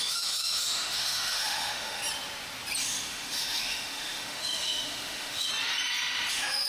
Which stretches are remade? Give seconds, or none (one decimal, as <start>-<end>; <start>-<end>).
0.0-2.0; 2.8-5.5; 6.3-6.7